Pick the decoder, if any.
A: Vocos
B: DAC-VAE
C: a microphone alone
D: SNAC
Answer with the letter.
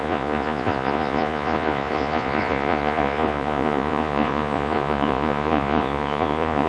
A